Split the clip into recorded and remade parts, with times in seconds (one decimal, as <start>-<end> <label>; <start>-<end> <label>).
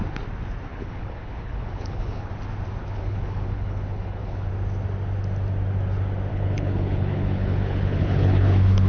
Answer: 0.0-0.7 recorded; 0.7-2.3 remade; 2.3-2.8 recorded; 2.8-4.5 remade; 4.5-6.3 recorded; 6.3-8.9 remade